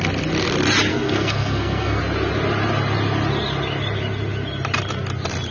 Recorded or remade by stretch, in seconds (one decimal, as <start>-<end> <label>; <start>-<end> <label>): 0.0-0.9 recorded; 0.9-2.0 remade; 2.0-5.5 recorded